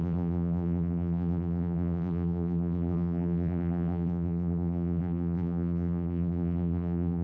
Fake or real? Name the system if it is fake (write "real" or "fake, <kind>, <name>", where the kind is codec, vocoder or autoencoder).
fake, vocoder, BigVGAN v2